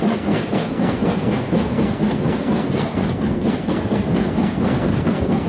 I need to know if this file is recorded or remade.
remade